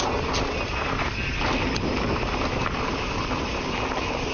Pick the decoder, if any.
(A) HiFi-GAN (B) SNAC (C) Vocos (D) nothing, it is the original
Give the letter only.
D